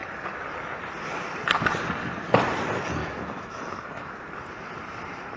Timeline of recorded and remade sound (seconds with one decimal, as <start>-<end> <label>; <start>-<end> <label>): 0.0-3.0 recorded; 3.0-4.1 remade; 4.1-5.4 recorded